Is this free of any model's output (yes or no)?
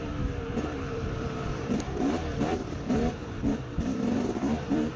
no